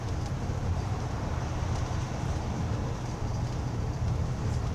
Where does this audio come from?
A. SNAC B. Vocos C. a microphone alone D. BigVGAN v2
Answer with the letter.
D